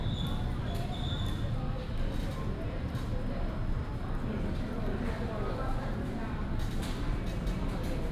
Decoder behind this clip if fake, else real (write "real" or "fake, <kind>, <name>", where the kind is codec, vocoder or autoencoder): real